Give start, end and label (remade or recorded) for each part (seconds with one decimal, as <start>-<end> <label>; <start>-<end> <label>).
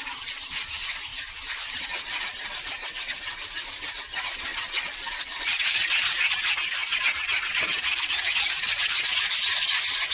0.0-4.5 remade; 4.5-5.5 recorded; 5.5-10.1 remade